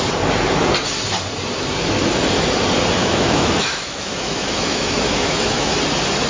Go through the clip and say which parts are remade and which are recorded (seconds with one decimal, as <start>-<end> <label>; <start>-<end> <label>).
0.0-3.0 recorded; 3.0-5.7 remade; 5.7-6.3 recorded